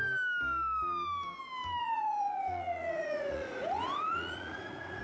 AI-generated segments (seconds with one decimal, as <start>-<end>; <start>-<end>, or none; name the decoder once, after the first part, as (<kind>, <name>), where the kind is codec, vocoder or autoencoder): 1.8-5.0 (vocoder, Vocos)

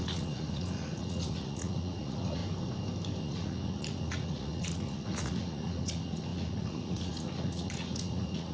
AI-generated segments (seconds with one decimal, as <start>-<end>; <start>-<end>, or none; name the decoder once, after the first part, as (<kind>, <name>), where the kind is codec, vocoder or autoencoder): 0.0-2.4 (vocoder, Vocos); 3.2-8.5

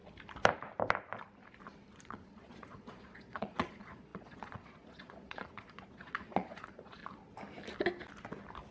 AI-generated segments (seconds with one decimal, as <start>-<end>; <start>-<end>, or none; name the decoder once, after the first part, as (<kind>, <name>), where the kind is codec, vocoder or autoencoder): 2.0-7.0 (vocoder, Vocos)

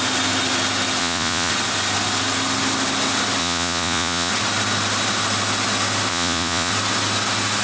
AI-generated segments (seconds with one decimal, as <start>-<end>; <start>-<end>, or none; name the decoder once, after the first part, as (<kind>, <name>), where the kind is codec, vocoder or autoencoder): 1.0-1.5 (vocoder, Vocos); 3.4-4.3; 6.1-6.7

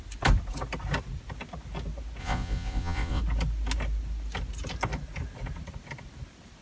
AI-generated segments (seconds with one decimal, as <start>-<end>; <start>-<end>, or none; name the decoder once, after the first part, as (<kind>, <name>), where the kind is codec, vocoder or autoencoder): 2.2-3.2 (vocoder, Vocos)

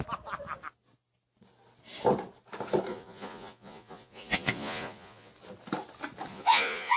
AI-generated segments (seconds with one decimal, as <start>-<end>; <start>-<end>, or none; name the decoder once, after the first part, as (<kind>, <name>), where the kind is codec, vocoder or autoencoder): 2.9-5.3 (vocoder, Vocos); 6.3-7.0

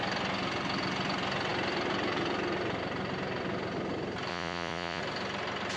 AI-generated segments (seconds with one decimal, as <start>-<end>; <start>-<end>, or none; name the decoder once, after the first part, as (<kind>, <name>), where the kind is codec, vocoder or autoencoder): 4.3-5.0 (vocoder, Vocos)

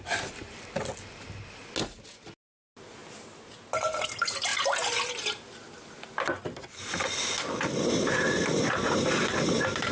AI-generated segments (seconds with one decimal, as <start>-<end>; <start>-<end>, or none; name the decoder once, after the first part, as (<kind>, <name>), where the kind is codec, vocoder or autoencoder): none